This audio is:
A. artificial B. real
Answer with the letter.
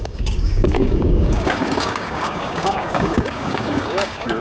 A